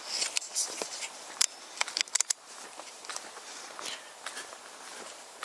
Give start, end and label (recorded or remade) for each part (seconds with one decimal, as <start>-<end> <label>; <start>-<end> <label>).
0.0-0.5 recorded; 0.5-3.7 remade; 3.7-4.9 recorded; 4.9-5.4 remade